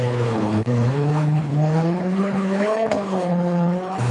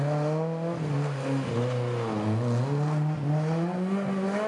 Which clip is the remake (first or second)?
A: first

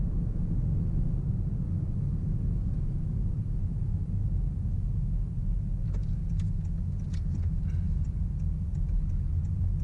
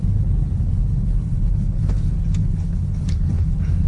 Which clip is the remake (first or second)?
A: second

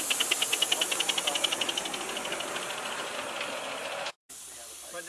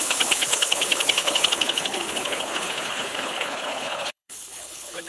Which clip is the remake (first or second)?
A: second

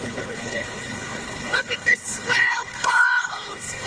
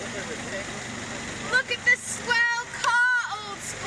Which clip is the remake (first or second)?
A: first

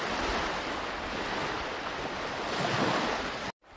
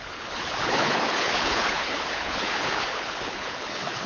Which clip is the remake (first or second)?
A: second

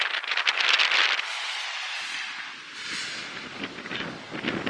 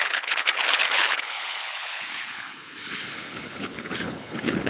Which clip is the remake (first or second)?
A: second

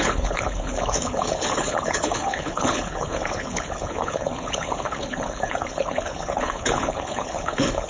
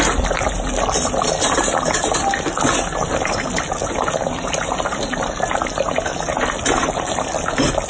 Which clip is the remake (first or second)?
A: first